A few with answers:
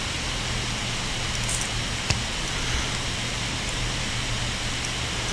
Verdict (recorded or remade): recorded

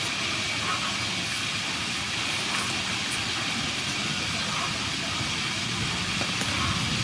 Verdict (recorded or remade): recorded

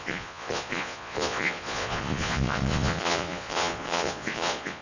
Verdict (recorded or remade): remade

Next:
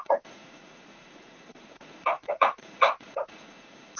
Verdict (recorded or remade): remade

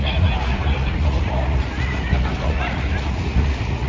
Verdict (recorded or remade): remade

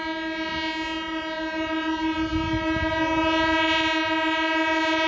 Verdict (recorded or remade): recorded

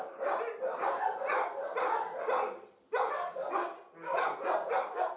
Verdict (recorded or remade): recorded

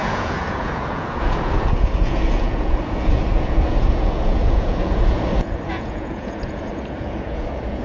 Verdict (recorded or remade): remade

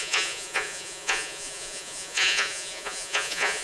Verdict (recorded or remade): remade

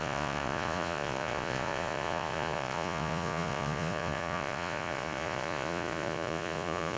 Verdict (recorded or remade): remade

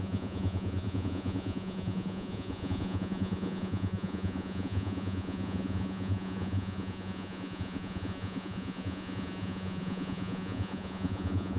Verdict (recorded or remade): remade